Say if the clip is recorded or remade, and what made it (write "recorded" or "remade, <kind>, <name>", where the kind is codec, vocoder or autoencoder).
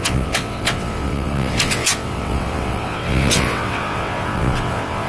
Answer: remade, vocoder, WaveNeXt